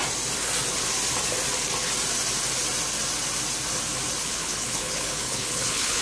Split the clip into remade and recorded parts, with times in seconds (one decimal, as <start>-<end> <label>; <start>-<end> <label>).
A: 0.0-4.2 recorded; 4.2-6.0 remade